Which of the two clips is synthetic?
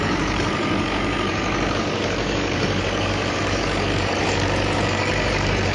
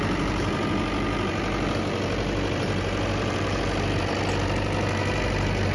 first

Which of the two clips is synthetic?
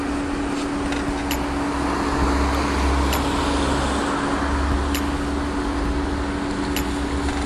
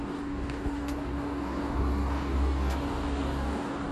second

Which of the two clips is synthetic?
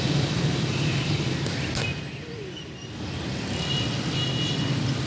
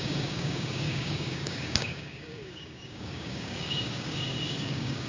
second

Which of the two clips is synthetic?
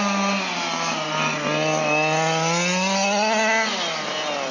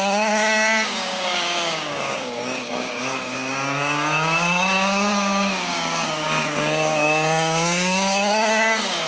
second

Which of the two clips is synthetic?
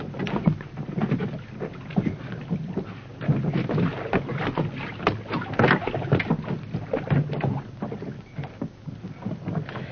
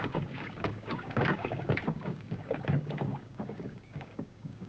second